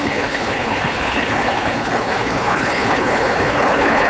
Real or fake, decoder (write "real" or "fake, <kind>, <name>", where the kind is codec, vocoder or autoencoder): fake, codec, HILCodec